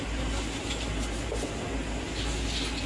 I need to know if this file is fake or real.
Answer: real